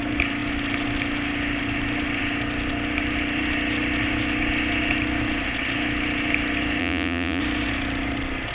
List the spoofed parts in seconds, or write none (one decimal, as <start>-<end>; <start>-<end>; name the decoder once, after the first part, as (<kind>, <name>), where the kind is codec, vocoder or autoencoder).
6.8-7.4 (vocoder, Vocos)